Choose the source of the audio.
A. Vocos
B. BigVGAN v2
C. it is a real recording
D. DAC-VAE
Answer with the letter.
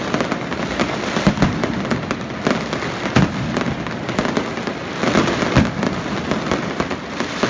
C